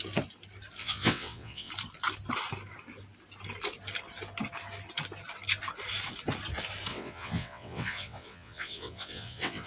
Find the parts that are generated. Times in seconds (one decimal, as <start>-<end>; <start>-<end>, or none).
0.8-1.7; 6.9-9.7